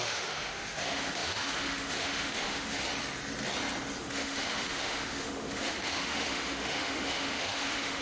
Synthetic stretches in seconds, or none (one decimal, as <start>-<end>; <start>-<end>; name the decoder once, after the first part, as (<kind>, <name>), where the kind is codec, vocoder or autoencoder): 0.0-2.9 (autoencoder, DAC-VAE); 4.0-8.0